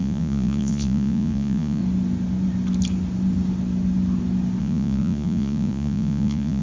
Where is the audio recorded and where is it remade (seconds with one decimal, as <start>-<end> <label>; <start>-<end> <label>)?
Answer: 0.0-1.8 remade; 1.8-4.6 recorded; 4.6-6.6 remade

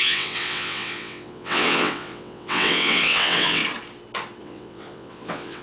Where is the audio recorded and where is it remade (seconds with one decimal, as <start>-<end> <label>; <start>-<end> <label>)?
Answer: 0.0-3.6 remade; 3.6-4.4 recorded; 4.4-5.6 remade